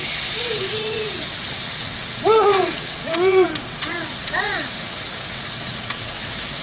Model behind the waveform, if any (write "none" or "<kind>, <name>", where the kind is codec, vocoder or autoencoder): vocoder, WaveNeXt